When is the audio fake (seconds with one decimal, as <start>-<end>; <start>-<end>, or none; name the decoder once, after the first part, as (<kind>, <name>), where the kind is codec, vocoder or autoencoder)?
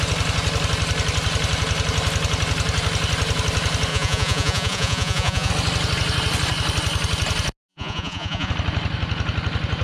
3.9-5.5 (vocoder, Vocos); 7.7-8.5